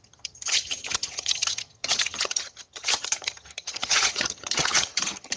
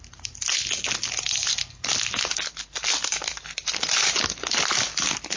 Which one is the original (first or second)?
second